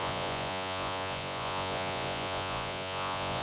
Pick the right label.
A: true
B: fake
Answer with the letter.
B